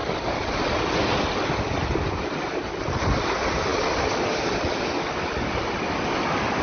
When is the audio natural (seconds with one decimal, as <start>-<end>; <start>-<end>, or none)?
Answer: 0.0-6.6